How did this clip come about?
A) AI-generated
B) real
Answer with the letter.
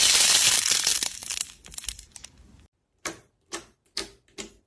A